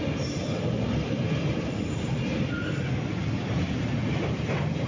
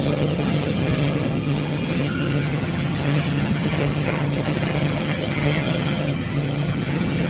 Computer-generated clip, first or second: second